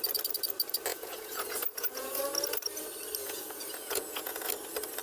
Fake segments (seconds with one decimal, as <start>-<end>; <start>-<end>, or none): 0.9-2.2; 3.2-4.5